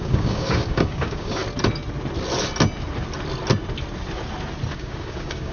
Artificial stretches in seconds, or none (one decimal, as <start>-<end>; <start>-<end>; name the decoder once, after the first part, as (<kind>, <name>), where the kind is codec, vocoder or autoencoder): 0.0-1.4 (codec, DAC); 4.7-5.5